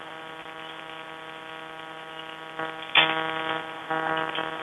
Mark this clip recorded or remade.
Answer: recorded